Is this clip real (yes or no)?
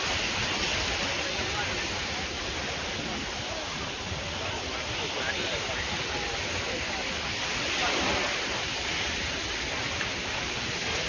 yes